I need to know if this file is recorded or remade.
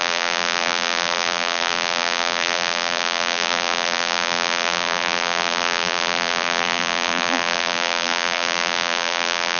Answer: remade